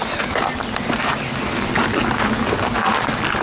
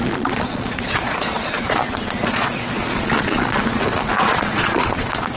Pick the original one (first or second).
first